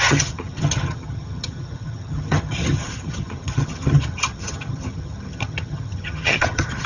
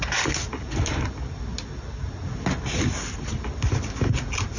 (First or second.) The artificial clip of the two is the first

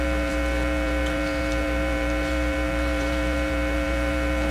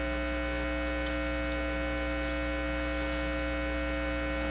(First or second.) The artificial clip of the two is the first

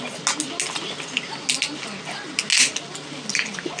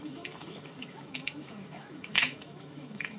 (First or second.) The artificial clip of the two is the second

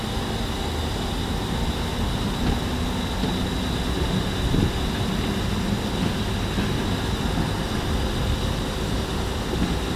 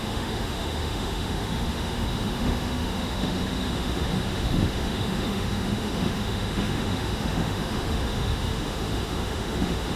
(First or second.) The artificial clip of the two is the second